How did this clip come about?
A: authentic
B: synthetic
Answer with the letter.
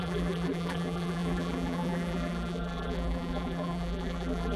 B